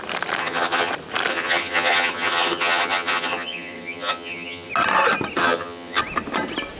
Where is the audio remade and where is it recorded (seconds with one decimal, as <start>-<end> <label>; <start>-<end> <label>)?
0.0-0.4 recorded; 0.4-0.9 remade; 0.9-1.3 recorded; 1.3-4.7 remade; 4.7-5.4 recorded; 5.4-6.0 remade; 6.0-6.8 recorded